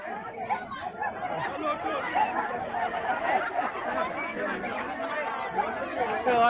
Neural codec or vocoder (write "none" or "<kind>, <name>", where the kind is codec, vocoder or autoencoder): none